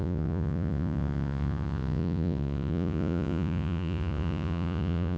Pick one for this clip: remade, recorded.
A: remade